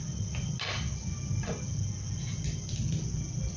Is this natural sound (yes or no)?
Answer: yes